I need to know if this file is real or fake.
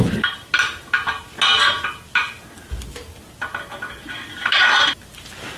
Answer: real